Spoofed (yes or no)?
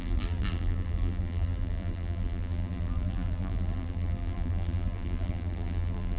yes